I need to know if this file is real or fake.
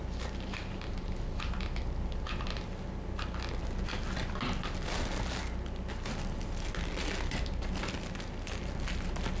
real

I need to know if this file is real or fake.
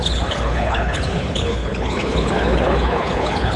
fake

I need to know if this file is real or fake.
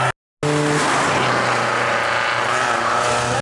real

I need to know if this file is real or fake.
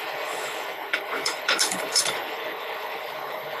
fake